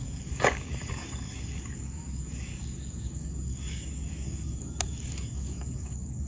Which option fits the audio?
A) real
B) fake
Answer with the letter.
B